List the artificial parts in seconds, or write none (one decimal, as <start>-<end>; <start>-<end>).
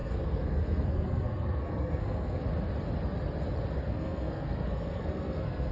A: 0.0-2.4; 3.8-5.7